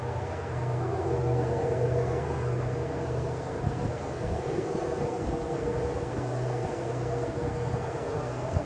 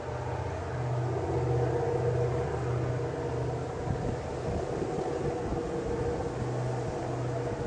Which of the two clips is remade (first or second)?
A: first